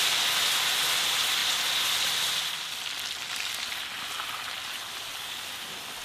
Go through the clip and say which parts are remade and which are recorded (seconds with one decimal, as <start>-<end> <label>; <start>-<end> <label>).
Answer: 0.0-6.0 recorded